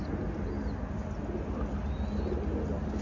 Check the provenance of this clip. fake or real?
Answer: real